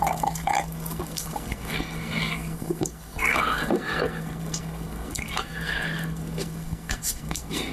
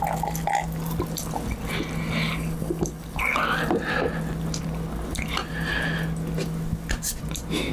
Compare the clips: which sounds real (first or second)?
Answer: second